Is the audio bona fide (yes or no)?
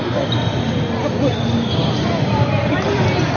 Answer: yes